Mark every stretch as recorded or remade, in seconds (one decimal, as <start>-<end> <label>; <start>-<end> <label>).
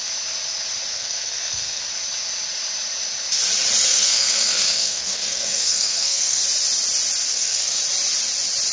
0.0-0.9 recorded; 0.9-1.8 remade; 1.8-3.9 recorded; 3.9-6.4 remade; 6.4-7.3 recorded; 7.3-7.8 remade; 7.8-8.7 recorded